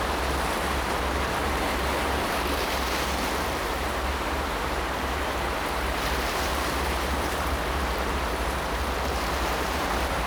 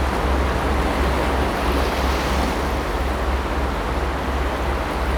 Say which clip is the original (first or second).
second